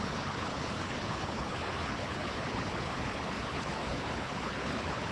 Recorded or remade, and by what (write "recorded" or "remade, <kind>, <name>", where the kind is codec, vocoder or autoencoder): remade, codec, HILCodec